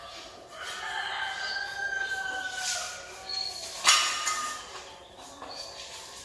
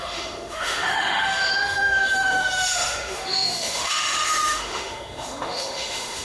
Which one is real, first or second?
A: first